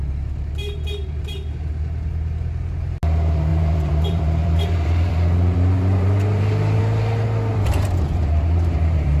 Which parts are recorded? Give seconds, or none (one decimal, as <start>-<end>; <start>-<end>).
0.0-3.5; 6.8-7.5